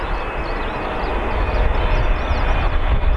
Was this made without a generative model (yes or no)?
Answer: yes